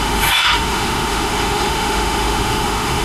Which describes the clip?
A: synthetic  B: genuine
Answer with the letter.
A